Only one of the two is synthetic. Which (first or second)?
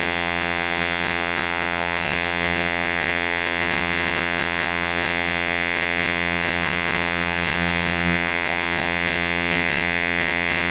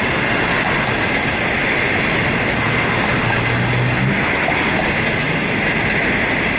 first